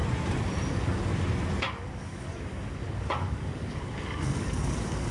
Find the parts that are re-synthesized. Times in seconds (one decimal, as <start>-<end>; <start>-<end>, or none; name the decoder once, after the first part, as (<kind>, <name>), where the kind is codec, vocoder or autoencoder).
0.7-1.1 (codec, DAC); 1.6-5.1